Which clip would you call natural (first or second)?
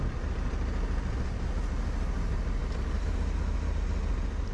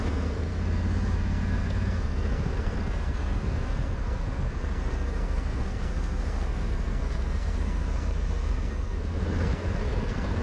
first